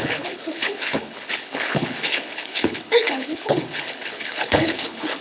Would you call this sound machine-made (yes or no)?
yes